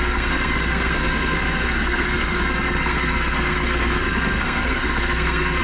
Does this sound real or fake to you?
fake